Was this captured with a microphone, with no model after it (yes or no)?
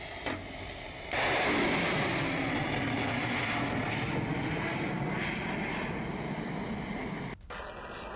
yes